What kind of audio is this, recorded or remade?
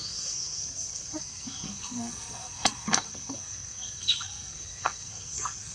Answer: remade